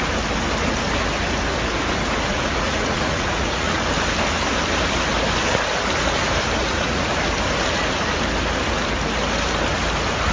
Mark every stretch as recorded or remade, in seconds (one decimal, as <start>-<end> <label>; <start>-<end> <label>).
0.0-2.3 recorded; 2.3-3.8 remade; 3.8-6.6 recorded; 6.6-7.1 remade; 7.1-10.3 recorded